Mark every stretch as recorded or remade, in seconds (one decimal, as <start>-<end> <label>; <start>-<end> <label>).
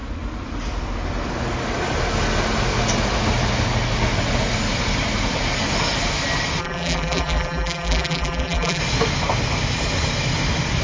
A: 0.0-6.6 recorded; 6.6-8.8 remade; 8.8-10.8 recorded